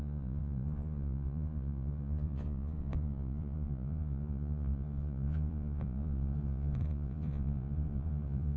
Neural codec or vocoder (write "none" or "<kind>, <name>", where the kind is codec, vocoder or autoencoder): vocoder, Vocos